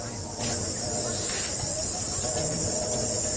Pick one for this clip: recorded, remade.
recorded